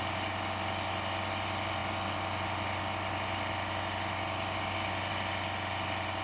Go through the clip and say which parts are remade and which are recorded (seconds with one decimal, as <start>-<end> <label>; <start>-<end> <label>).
0.0-6.2 recorded